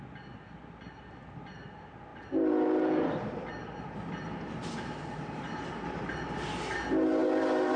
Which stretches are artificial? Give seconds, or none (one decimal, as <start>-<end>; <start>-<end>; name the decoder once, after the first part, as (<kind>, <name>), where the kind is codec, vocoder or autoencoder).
2.1-6.6 (vocoder, BigVGAN v2); 7.2-7.8